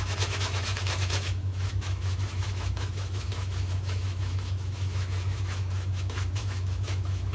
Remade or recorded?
remade